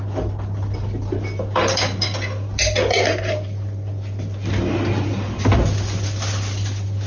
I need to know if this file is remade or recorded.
recorded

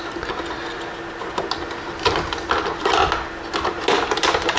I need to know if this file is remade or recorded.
recorded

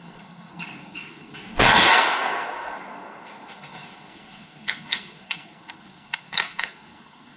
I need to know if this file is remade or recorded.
remade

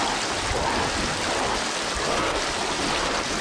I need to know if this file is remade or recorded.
recorded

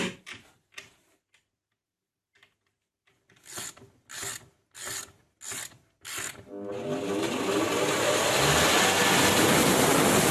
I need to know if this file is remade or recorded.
recorded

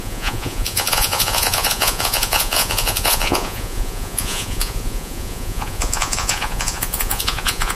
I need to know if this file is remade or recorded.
remade